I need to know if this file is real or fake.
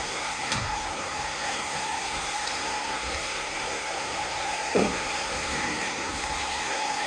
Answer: fake